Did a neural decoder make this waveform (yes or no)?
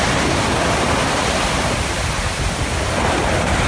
no